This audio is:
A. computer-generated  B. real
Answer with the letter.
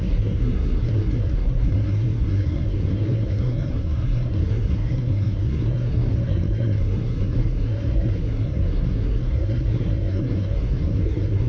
A